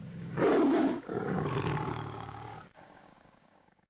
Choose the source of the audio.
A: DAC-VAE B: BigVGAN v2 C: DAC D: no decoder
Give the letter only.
C